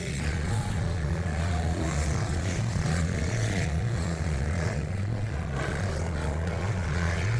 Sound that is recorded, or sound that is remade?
remade